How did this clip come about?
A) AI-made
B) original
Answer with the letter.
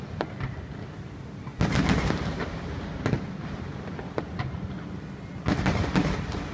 B